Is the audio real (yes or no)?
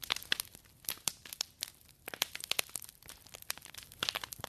yes